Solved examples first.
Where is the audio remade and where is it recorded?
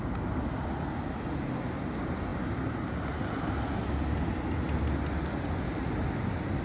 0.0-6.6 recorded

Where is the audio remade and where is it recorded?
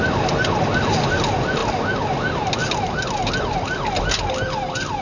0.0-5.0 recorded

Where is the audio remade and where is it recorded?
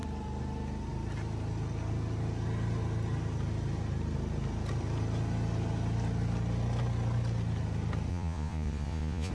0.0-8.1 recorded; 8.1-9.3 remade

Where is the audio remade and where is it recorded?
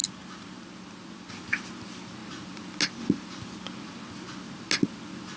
0.0-5.4 recorded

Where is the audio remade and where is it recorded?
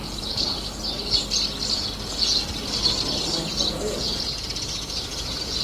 0.0-0.5 remade; 0.5-3.9 recorded; 3.9-5.6 remade